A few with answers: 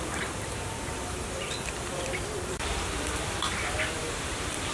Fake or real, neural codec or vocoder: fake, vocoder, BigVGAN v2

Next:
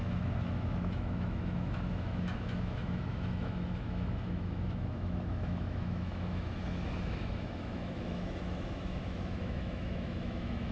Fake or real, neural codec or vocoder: fake, autoencoder, DAC-VAE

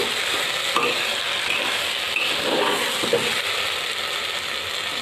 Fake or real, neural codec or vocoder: real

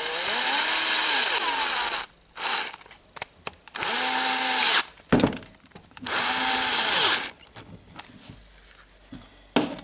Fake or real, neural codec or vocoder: real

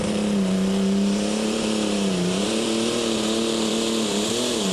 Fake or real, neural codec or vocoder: fake, vocoder, BigVGAN v2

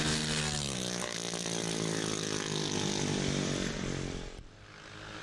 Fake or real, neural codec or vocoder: real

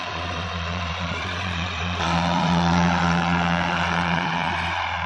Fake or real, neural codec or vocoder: fake, vocoder, Vocos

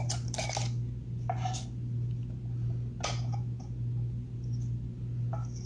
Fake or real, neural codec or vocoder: real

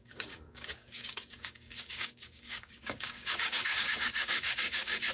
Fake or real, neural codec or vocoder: fake, codec, DAC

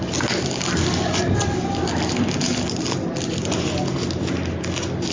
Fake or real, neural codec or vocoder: real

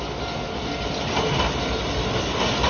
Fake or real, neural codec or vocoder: real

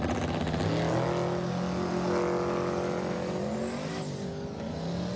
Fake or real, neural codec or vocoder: real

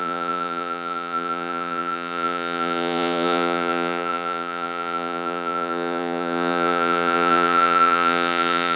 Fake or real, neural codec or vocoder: fake, vocoder, Vocos